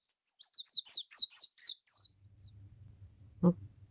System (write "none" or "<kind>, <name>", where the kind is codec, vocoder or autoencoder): none